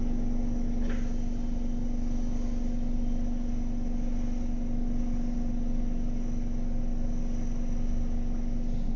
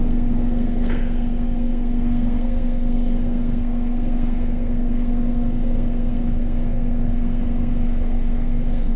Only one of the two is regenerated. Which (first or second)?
second